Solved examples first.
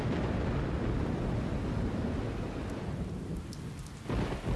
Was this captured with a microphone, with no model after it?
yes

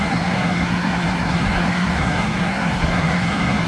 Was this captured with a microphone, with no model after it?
no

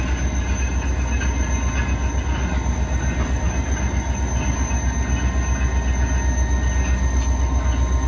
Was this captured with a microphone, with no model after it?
yes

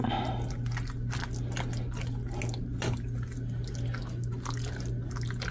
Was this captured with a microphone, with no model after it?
yes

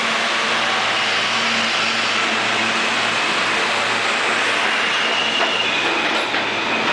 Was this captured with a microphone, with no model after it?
yes